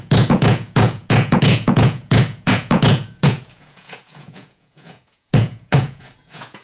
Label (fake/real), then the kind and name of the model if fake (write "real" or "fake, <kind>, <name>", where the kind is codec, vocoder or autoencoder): fake, vocoder, Vocos